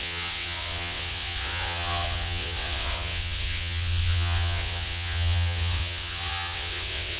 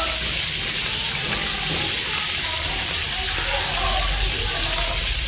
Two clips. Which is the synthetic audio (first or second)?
first